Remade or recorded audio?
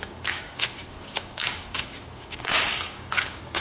remade